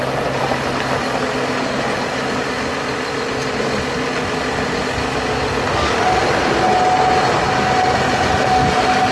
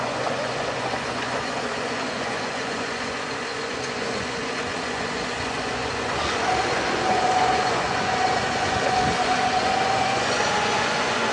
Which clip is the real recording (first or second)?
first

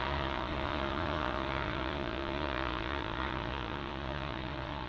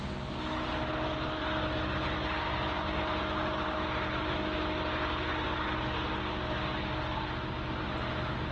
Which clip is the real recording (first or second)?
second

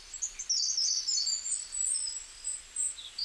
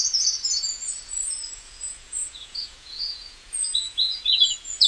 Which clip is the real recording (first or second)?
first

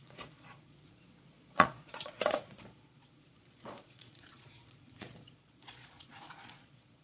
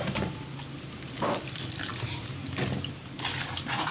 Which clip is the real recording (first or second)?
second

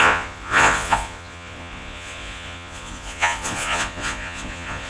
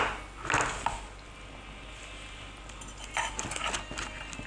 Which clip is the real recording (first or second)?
second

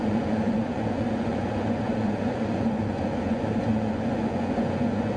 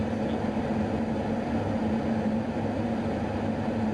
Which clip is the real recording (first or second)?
second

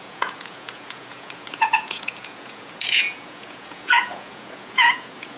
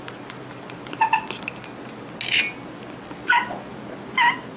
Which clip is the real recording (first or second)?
second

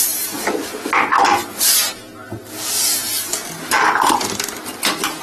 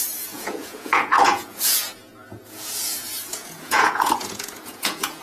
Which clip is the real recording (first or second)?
first